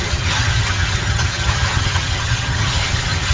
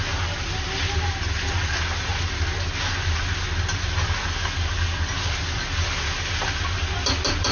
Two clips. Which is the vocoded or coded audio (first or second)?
first